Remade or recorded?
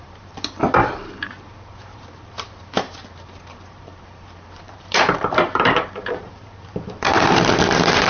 remade